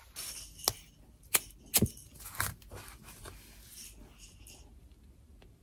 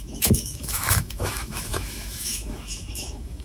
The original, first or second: first